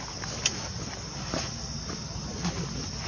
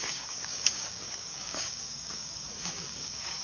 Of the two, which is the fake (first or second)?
second